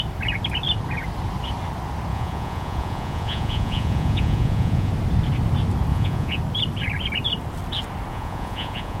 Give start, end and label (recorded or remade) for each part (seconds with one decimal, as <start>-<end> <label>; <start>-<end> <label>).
0.0-2.1 recorded; 2.1-4.9 remade; 4.9-5.9 recorded; 5.9-6.4 remade; 6.4-8.1 recorded; 8.1-9.0 remade